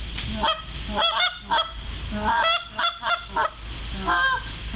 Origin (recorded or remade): recorded